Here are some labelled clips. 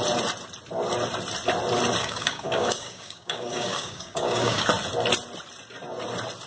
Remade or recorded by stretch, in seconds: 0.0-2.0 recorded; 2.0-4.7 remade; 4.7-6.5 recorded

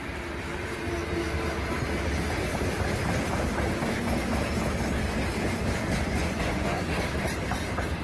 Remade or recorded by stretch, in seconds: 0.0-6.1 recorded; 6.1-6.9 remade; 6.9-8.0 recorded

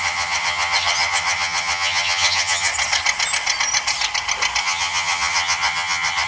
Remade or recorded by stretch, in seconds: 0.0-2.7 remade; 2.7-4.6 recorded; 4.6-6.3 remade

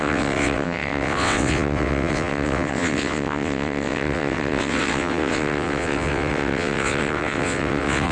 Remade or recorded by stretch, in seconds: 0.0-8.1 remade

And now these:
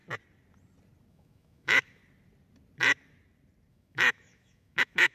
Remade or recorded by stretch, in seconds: 0.0-1.1 recorded; 1.1-2.0 remade; 2.0-3.7 recorded; 3.7-5.1 remade